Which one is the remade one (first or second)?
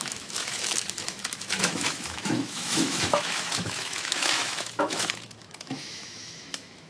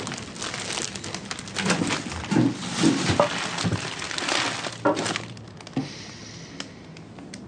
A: first